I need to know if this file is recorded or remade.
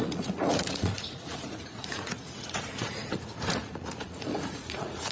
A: remade